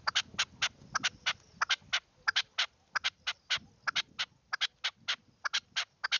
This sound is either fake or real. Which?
real